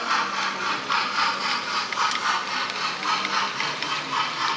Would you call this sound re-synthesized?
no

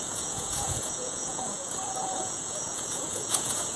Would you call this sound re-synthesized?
yes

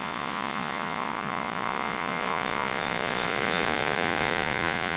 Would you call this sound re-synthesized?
yes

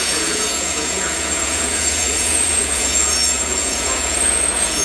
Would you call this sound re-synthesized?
yes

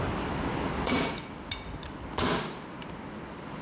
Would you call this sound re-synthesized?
no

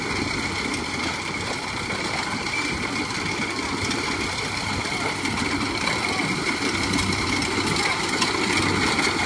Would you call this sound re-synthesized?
no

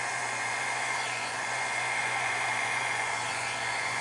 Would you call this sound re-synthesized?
yes